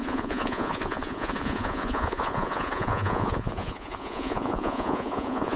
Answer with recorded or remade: remade